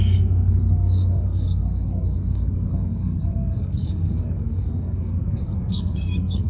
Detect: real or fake fake